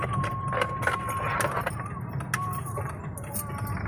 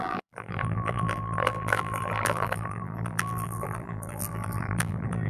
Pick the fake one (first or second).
second